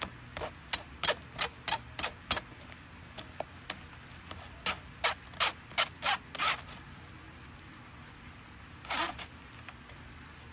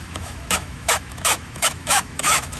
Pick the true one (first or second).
first